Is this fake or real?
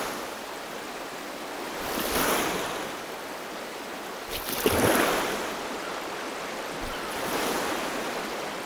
real